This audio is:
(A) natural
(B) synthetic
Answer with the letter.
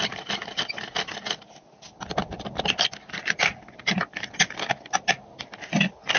A